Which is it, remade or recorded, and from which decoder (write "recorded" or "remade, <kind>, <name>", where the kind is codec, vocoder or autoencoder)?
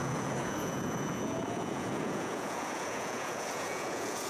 remade, vocoder, Vocos